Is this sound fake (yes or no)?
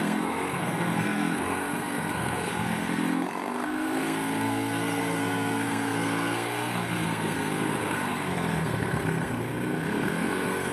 yes